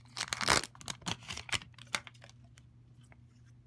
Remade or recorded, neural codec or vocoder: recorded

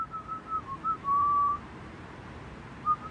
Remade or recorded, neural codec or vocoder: remade, vocoder, BigVGAN v2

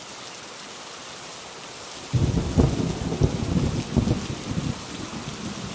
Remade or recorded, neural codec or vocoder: recorded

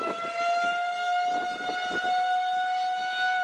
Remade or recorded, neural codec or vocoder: recorded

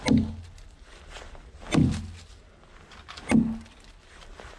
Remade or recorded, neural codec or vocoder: recorded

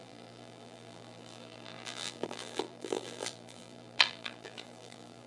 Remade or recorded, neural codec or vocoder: remade, vocoder, BigVGAN v2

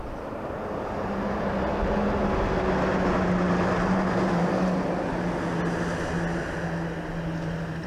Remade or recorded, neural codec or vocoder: recorded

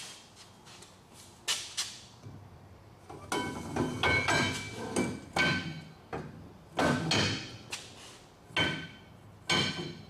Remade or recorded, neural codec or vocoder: recorded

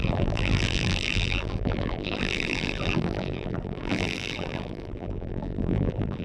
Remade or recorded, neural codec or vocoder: remade, vocoder, BigVGAN v2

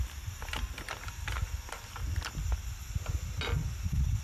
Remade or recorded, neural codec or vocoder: recorded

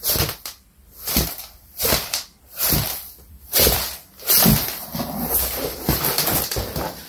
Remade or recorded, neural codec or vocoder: remade, vocoder, BigVGAN v2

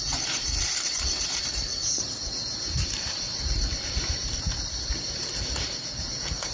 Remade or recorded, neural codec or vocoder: remade, vocoder, BigVGAN v2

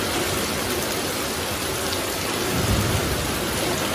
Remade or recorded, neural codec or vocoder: remade, vocoder, BigVGAN v2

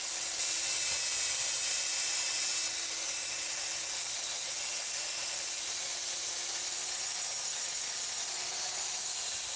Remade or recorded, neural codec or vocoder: recorded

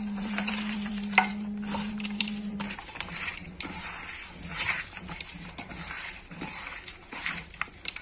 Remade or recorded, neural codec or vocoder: remade, vocoder, BigVGAN v2